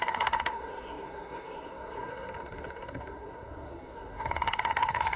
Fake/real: fake